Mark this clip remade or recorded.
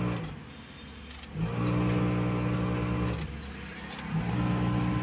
recorded